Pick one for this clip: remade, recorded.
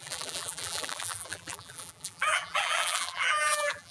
remade